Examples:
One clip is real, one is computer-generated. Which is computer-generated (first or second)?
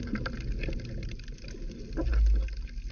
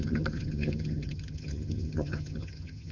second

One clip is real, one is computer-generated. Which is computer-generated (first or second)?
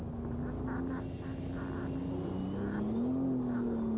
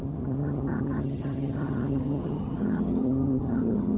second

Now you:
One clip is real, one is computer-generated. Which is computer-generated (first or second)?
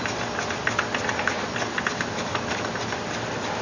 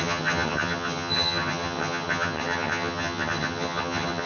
second